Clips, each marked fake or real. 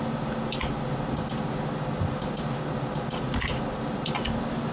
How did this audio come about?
real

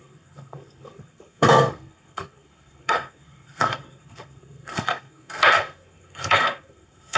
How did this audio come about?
fake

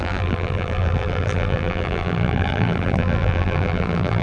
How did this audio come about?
fake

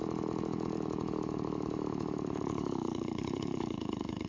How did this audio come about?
fake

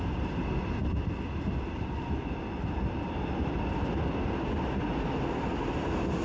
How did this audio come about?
real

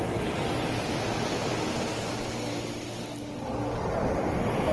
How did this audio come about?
real